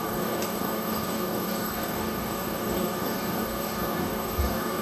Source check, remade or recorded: remade